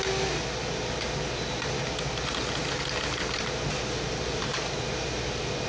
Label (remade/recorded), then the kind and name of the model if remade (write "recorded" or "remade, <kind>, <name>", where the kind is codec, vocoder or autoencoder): recorded